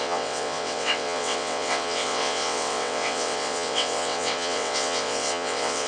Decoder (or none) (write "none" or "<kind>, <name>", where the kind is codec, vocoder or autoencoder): vocoder, WaveNeXt